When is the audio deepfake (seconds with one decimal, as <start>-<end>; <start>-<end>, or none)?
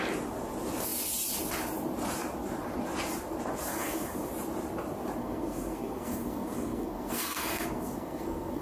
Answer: 3.7-4.3; 5.2-8.6